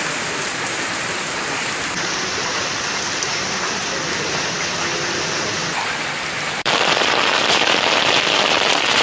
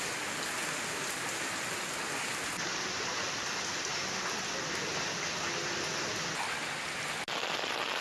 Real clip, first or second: second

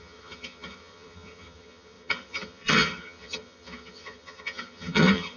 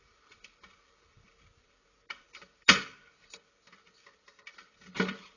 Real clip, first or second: second